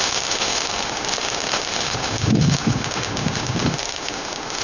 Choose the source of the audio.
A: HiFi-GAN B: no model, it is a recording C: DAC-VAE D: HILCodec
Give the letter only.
C